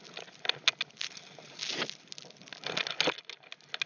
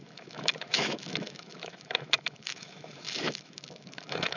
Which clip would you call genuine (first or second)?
first